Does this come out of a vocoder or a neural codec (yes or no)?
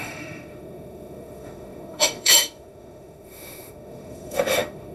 yes